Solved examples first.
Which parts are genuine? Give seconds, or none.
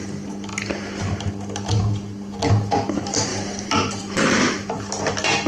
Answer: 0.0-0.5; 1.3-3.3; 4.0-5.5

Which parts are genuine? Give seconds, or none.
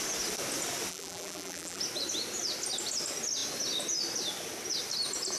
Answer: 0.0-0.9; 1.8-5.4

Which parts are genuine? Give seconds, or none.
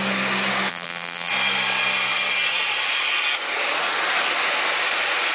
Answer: 0.0-0.7; 1.3-5.3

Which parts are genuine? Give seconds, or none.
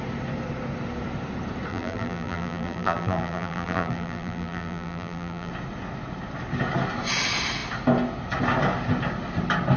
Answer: 0.0-1.7; 5.5-9.8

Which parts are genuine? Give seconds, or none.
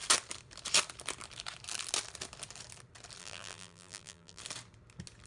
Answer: 0.0-3.2; 4.4-5.3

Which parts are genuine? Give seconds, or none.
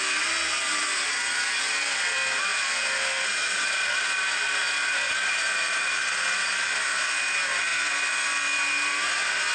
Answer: 0.0-9.5